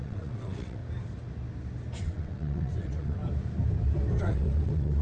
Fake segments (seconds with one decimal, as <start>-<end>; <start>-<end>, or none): 0.0-0.8; 2.0-3.2; 4.2-5.0